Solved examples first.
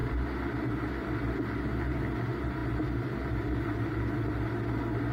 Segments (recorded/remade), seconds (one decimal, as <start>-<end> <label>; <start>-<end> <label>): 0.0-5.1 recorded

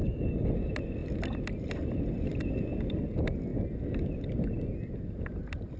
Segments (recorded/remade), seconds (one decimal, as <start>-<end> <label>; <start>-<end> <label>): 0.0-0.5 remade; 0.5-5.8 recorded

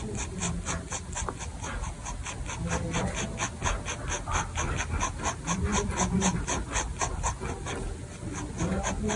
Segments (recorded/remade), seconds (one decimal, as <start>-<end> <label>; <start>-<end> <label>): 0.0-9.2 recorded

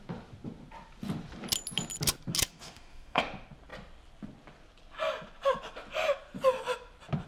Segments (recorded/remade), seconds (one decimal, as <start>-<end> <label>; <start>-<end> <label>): 0.0-2.5 recorded; 2.5-3.2 remade; 3.2-7.3 recorded

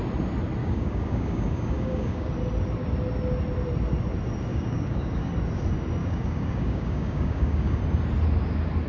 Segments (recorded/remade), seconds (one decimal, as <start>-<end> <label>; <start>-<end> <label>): 0.0-0.6 recorded; 0.6-2.3 remade; 2.3-4.5 recorded; 4.5-5.3 remade; 5.3-6.0 recorded; 6.0-7.8 remade; 7.8-8.9 recorded